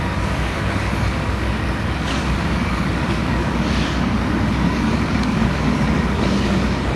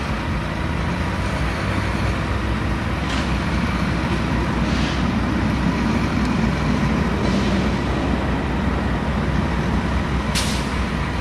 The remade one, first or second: first